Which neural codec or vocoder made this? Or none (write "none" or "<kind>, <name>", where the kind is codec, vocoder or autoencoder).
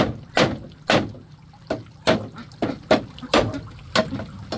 none